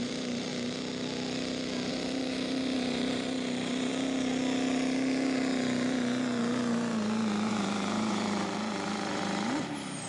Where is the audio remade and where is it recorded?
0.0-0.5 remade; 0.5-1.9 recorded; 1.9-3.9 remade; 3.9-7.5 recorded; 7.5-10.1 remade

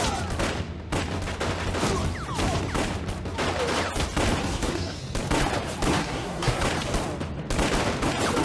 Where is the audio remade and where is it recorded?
0.0-4.4 recorded; 4.4-5.0 remade; 5.0-6.0 recorded; 6.0-6.6 remade; 6.6-8.4 recorded

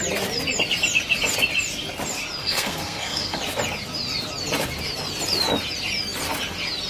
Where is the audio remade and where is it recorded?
0.0-2.4 recorded; 2.4-3.4 remade; 3.4-6.9 recorded

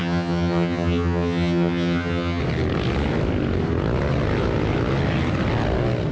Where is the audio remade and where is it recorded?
0.0-2.4 remade; 2.4-6.1 recorded

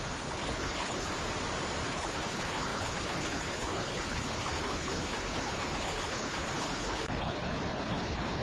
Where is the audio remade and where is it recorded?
0.0-1.1 remade; 1.1-1.9 recorded; 1.9-8.4 remade

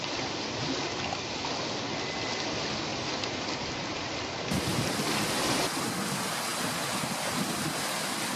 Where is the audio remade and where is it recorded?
0.0-2.9 recorded; 2.9-4.0 remade; 4.0-4.7 recorded; 4.7-5.5 remade; 5.5-8.4 recorded

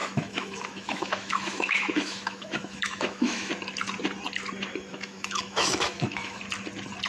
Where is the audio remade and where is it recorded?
0.0-3.5 remade; 3.5-4.9 recorded; 4.9-6.4 remade; 6.4-7.1 recorded